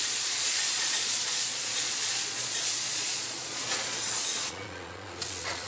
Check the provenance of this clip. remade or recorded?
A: remade